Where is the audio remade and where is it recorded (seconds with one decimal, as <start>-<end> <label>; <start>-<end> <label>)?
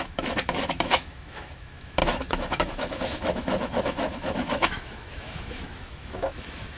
0.0-6.8 remade